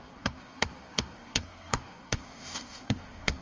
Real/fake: fake